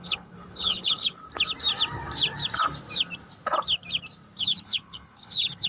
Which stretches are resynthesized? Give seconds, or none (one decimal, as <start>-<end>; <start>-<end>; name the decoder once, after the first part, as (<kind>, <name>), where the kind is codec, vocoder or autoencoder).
0.0-1.2 (codec, HILCodec); 4.4-5.7